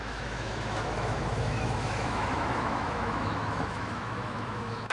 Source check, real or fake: fake